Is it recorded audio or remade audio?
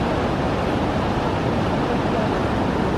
recorded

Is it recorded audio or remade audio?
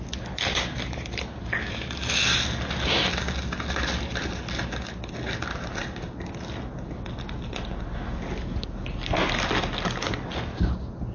recorded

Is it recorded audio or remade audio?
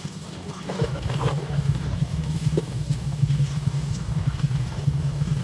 remade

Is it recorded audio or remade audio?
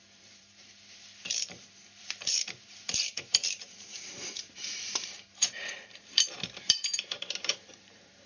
remade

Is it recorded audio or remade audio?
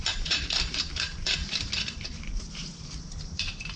remade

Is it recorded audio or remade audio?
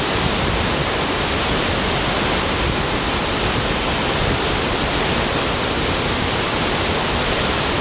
recorded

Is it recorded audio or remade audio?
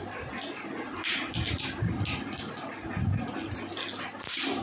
recorded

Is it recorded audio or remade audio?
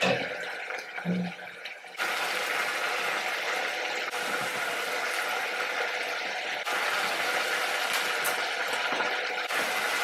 recorded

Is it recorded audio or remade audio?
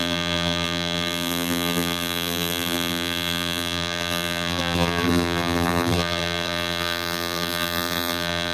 remade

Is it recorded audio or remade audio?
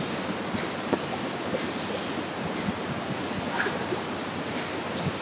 recorded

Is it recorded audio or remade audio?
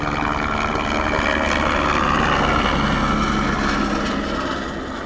recorded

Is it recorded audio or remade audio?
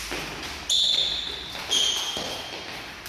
recorded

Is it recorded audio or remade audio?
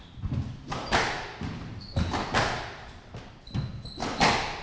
recorded